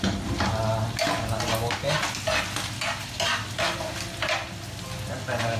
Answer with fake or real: real